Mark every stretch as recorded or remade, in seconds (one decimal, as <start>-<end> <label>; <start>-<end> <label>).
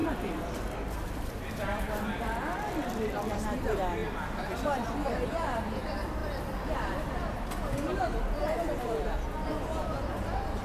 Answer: 0.0-6.2 remade; 6.2-10.6 recorded